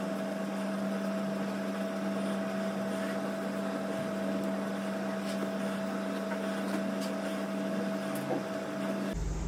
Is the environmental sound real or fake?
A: real